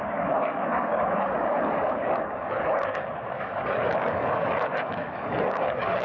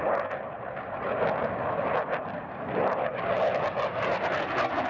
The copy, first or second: first